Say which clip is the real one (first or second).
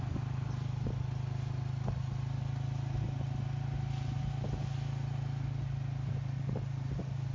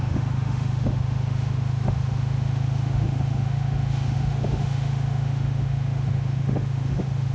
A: first